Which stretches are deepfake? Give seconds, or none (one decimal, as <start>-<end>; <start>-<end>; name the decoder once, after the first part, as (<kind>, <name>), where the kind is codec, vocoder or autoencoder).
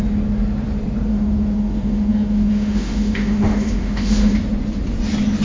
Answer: 1.1-4.3 (autoencoder, DAC-VAE)